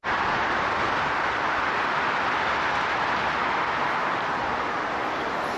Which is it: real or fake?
real